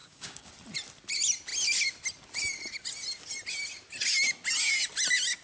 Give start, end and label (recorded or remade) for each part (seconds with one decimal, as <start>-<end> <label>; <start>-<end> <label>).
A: 0.0-0.5 remade; 0.5-5.4 recorded